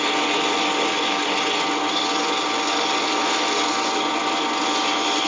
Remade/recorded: recorded